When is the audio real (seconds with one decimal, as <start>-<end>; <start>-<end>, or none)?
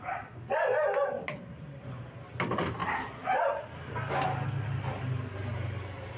0.0-6.2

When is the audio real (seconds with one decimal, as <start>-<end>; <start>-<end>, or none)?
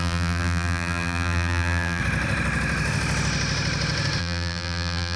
2.0-4.2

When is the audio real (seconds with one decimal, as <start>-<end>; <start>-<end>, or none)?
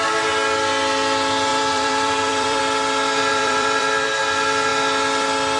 0.0-1.5; 2.6-3.3; 4.2-5.6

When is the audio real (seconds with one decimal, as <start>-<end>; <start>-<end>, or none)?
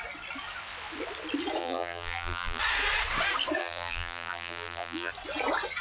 0.0-1.6; 2.6-3.6; 5.1-5.8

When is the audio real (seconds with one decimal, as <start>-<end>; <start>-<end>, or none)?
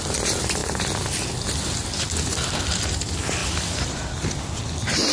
0.0-3.4; 4.4-5.1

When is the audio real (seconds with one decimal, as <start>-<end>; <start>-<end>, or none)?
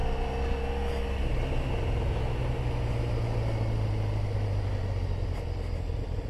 0.0-6.3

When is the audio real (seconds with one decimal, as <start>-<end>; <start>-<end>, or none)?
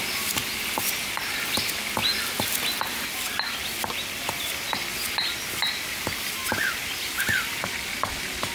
0.0-6.4; 7.9-8.5